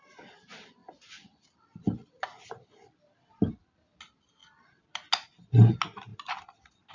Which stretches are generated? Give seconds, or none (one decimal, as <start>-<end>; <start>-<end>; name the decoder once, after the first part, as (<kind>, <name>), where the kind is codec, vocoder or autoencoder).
0.8-3.6 (vocoder, BigVGAN v2); 4.4-5.1; 6.1-6.9